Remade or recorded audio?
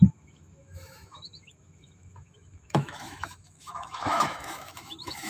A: remade